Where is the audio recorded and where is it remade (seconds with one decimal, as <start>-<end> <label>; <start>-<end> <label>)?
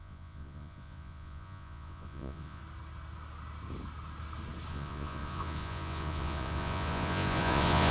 0.0-2.6 remade; 2.6-4.7 recorded; 4.7-7.9 remade